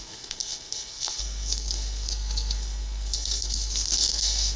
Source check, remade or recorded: remade